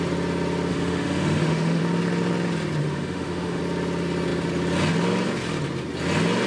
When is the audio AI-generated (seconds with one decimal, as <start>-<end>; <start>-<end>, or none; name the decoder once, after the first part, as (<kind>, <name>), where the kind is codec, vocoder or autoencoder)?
0.7-1.8 (autoencoder, DAC-VAE); 2.8-3.6